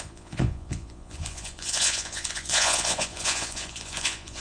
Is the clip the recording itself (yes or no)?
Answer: no